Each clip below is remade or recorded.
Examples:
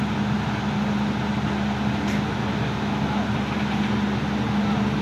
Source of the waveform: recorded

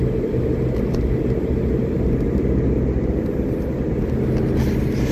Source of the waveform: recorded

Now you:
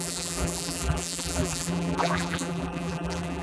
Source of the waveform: remade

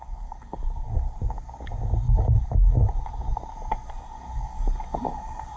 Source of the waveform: recorded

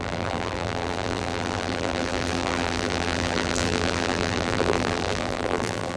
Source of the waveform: remade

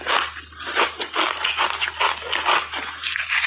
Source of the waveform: recorded